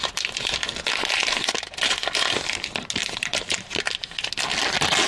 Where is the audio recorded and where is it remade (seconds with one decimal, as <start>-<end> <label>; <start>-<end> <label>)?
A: 0.0-3.0 recorded; 3.0-3.7 remade; 3.7-5.1 recorded

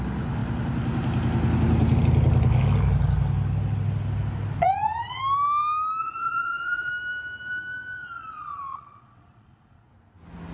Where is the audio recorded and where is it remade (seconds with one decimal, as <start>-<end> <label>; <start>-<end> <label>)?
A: 0.0-4.6 recorded; 4.6-5.2 remade; 5.2-6.0 recorded; 6.0-6.9 remade; 6.9-8.0 recorded; 8.0-9.9 remade; 9.9-10.5 recorded

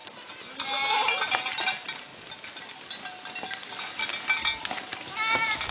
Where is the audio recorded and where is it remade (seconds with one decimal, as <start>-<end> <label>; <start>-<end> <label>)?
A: 0.0-5.7 recorded

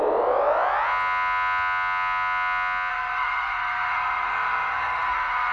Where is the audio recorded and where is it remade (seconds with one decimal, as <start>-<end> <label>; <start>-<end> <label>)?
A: 0.0-2.9 recorded; 2.9-5.5 remade